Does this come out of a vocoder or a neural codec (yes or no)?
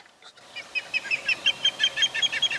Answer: no